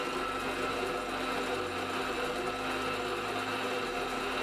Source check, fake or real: real